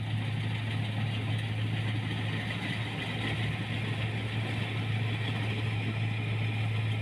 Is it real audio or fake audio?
real